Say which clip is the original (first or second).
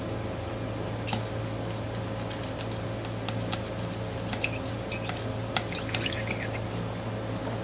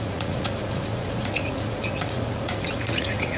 first